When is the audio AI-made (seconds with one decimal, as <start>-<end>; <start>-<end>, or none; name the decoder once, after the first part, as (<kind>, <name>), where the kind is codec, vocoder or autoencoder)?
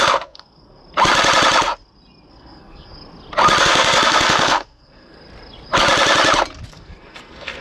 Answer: 0.0-0.8 (codec, SNAC); 2.3-2.9; 3.6-5.2; 6.7-7.6